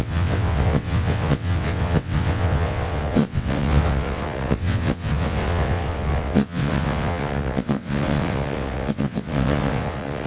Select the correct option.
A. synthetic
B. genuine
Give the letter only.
A